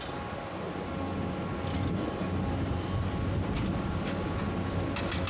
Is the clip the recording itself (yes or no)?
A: yes